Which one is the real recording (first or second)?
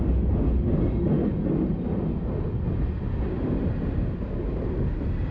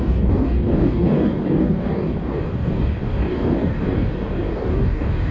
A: first